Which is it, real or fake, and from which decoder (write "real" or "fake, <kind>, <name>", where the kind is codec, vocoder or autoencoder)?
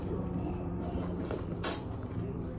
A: fake, vocoder, BigVGAN v2